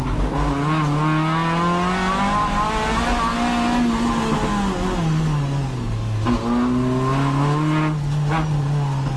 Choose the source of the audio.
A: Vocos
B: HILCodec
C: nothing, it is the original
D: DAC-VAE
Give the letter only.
C